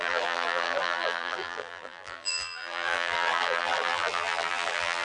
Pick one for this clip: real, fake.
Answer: fake